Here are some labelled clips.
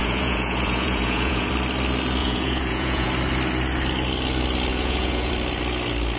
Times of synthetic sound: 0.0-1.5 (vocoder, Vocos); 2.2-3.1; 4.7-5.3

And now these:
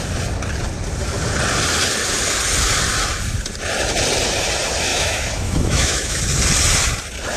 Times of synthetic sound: 4.9-6.2 (autoencoder, DAC-VAE)

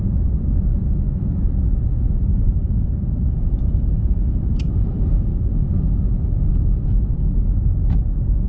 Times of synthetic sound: 2.3-5.7 (vocoder, BigVGAN v2)

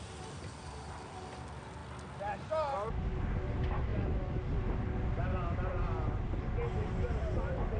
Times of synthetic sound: none

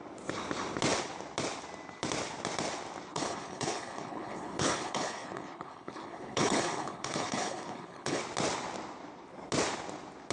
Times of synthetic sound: 3.1-8.2 (codec, HILCodec)

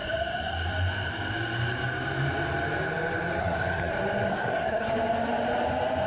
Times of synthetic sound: 3.4-3.9 (codec, SNAC); 4.3-4.9

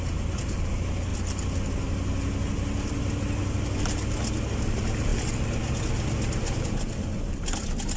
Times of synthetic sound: none

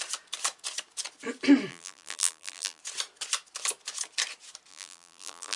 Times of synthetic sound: 1.7-2.8 (vocoder, BigVGAN v2); 4.7-5.6